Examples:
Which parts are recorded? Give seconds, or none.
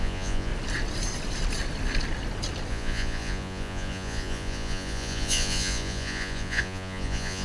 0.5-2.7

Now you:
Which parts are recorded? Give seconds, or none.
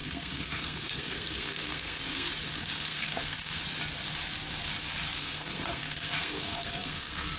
3.6-5.2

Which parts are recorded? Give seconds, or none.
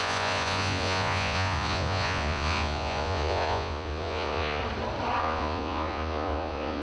4.6-5.2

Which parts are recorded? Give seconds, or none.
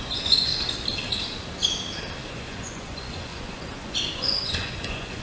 0.5-2.3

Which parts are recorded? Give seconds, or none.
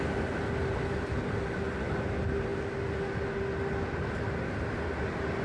0.0-5.4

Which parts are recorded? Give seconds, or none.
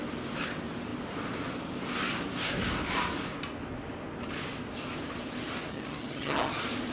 0.0-5.7; 6.5-6.9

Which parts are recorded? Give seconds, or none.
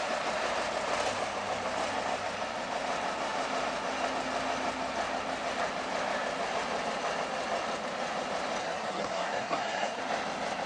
0.0-8.6; 10.0-10.7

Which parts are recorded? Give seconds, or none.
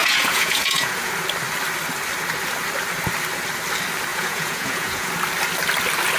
1.1-4.1; 5.1-6.2